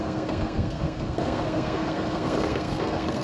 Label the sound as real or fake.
fake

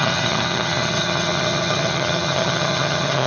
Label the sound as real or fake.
fake